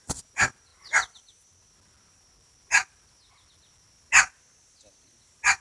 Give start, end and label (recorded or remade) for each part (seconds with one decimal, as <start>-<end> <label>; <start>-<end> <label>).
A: 0.0-5.6 recorded

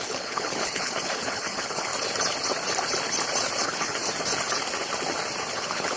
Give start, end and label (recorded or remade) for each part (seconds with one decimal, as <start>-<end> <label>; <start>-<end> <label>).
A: 0.0-1.9 remade; 1.9-3.6 recorded; 3.6-4.0 remade; 4.0-5.6 recorded; 5.6-6.0 remade